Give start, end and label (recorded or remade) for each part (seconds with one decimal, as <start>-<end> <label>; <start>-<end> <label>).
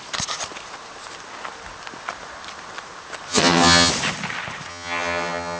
0.0-3.3 recorded; 3.3-3.9 remade; 3.9-4.7 recorded; 4.7-5.6 remade